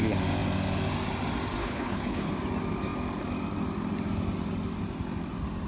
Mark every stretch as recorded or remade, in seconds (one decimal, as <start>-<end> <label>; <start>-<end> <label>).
0.0-1.6 recorded; 1.6-2.3 remade; 2.3-5.7 recorded